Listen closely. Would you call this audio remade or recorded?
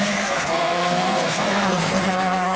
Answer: remade